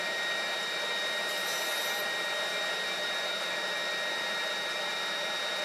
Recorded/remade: recorded